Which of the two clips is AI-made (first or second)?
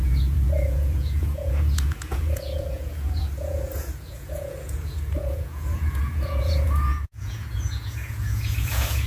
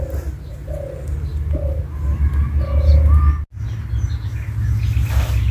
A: first